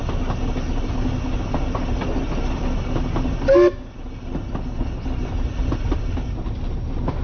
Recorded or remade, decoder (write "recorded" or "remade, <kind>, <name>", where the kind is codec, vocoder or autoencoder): recorded